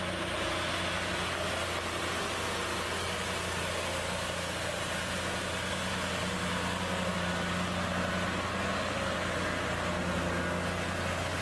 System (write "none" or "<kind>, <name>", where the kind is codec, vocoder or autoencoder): none